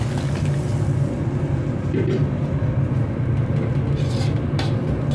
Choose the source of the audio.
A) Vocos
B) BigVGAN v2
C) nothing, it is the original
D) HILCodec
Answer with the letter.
C